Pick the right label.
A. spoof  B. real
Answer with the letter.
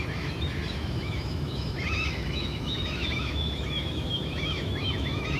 A